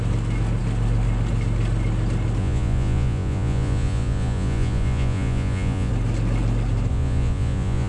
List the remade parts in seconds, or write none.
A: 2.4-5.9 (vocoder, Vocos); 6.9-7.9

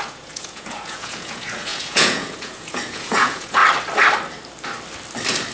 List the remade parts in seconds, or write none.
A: 0.0-3.6 (vocoder, Vocos)

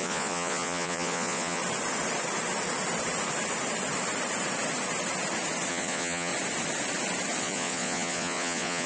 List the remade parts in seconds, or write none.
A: 0.0-1.6 (vocoder, Vocos); 5.7-6.3; 7.4-8.9

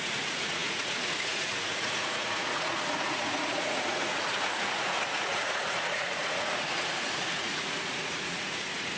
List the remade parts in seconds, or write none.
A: 0.0-9.0 (vocoder, Vocos)